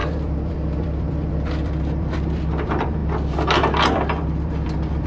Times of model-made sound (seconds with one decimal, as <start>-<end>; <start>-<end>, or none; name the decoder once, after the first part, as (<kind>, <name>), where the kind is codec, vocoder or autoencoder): 0.0-5.1 (vocoder, BigVGAN v2)